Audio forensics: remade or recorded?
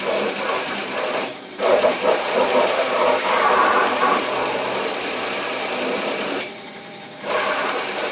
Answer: remade